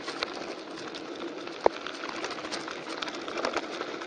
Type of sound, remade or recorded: recorded